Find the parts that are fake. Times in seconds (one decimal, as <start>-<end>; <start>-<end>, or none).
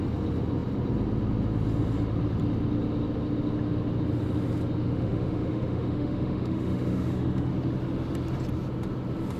4.8-7.5